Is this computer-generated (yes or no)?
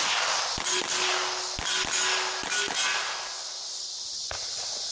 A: no